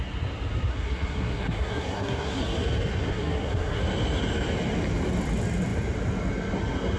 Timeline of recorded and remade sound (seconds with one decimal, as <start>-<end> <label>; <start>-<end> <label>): 0.0-0.7 recorded; 0.7-2.4 remade; 2.4-3.0 recorded; 3.0-3.8 remade; 3.8-7.0 recorded